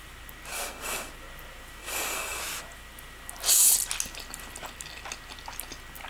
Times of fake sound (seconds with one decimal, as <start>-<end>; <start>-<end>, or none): 0.5-1.1; 1.8-2.4